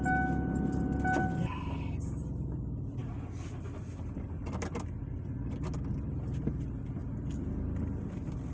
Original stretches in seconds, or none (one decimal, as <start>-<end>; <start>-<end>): 0.0-3.0; 5.9-8.5